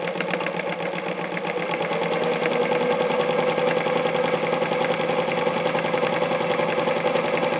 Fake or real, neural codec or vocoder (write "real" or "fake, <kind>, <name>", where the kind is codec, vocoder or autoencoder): real